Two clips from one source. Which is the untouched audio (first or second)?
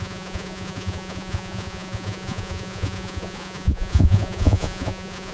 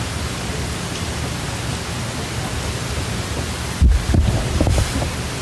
second